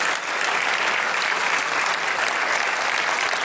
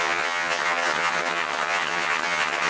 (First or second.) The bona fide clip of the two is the first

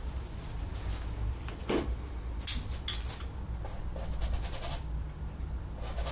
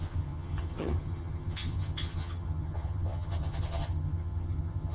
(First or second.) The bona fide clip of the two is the first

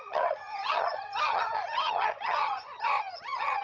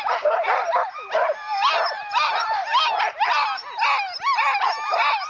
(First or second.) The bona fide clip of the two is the second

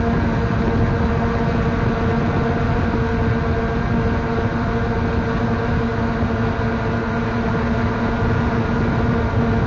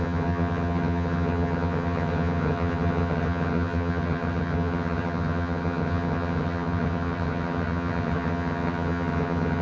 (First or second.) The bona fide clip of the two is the first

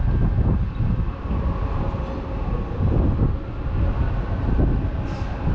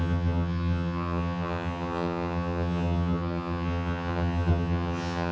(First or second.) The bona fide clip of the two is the first